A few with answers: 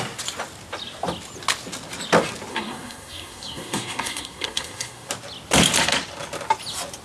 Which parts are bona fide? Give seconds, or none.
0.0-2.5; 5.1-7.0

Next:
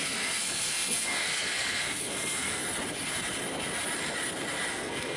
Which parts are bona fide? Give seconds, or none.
2.6-4.7

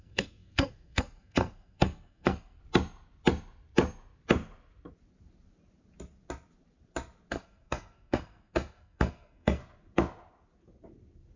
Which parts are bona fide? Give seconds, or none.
2.6-7.3; 9.6-11.4

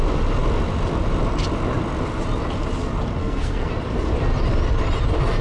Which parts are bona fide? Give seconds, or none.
0.0-3.2; 3.7-5.4

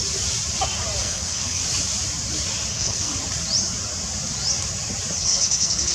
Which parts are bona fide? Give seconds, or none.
0.0-1.0; 1.6-2.7; 3.1-5.2

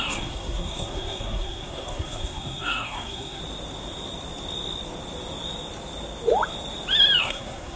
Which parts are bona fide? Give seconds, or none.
3.4-7.2